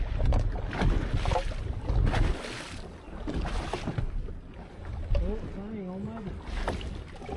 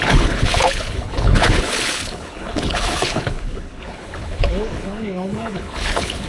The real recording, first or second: first